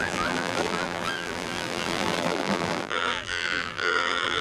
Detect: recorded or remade remade